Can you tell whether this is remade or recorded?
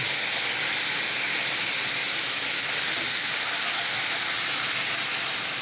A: recorded